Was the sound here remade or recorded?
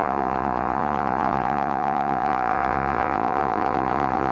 remade